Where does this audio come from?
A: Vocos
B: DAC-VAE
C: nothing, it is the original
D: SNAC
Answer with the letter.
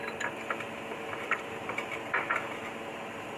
C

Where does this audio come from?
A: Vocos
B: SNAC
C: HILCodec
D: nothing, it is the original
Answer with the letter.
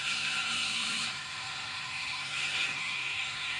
B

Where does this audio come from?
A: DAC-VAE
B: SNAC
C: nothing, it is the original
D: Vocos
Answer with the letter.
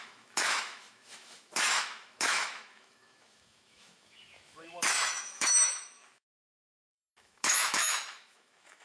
A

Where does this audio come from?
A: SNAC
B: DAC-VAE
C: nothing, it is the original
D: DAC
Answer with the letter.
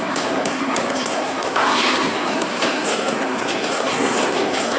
A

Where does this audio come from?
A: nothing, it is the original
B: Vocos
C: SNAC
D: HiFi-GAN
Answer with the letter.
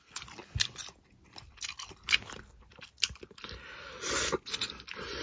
A